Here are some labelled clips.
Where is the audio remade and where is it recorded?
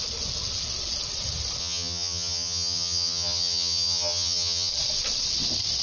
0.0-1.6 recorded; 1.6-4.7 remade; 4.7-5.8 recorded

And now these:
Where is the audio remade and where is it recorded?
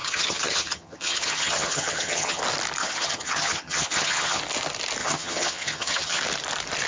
0.0-2.4 remade; 2.4-2.8 recorded; 2.8-4.4 remade; 4.4-5.0 recorded; 5.0-6.2 remade; 6.2-6.9 recorded